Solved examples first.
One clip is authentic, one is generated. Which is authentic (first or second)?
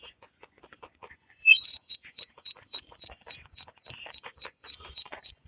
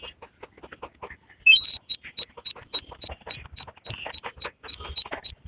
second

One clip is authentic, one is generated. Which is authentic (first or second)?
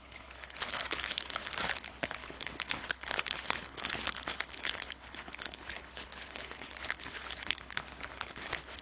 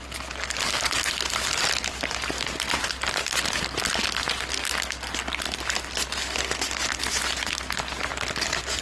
second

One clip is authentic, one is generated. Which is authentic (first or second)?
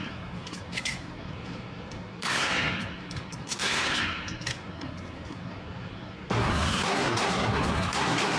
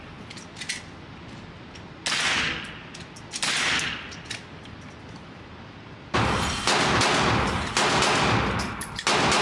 second